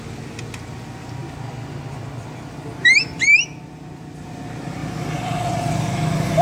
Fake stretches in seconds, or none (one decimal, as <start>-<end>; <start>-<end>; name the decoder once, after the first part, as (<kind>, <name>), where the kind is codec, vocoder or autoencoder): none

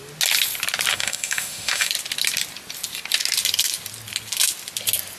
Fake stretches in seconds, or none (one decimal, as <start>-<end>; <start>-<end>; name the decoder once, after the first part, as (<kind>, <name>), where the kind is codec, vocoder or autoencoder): 0.9-1.9 (autoencoder, DAC-VAE)

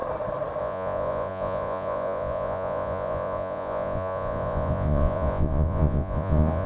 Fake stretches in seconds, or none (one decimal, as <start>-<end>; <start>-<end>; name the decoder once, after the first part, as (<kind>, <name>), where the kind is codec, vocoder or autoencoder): 0.6-6.7 (vocoder, Vocos)

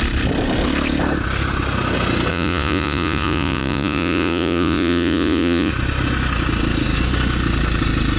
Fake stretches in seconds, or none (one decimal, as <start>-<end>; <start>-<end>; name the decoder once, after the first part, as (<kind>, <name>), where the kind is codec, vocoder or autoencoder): 2.3-5.7 (vocoder, Vocos)

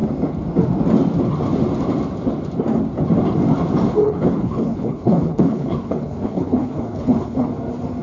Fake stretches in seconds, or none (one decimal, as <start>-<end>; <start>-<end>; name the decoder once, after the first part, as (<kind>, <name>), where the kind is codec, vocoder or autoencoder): 3.9-7.5 (codec, HILCodec)

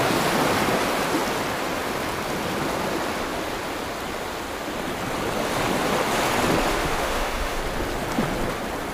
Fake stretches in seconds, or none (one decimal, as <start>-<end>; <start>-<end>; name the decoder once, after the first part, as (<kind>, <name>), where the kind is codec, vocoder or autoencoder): 6.7-7.6 (autoencoder, DAC-VAE)

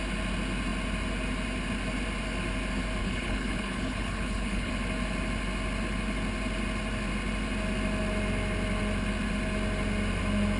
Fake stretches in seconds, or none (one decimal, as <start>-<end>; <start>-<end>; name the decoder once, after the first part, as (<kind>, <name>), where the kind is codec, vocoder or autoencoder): 3.0-4.7 (codec, HILCodec)